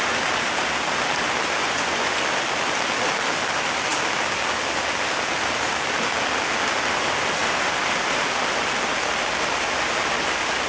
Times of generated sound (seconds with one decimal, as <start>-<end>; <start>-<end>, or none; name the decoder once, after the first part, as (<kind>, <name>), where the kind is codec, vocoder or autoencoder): 1.6-2.2 (vocoder, Vocos)